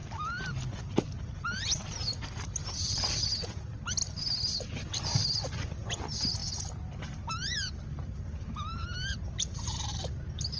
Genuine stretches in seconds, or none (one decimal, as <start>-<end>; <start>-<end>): 0.0-0.8; 4.0-5.0